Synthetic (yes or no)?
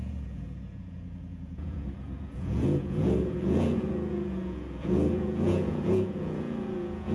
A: yes